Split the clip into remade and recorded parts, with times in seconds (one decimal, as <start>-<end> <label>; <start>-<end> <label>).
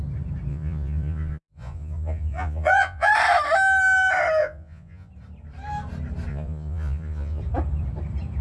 0.0-0.5 recorded; 0.5-3.1 remade; 3.1-4.4 recorded; 4.4-5.1 remade; 5.1-6.3 recorded; 6.3-7.4 remade; 7.4-8.4 recorded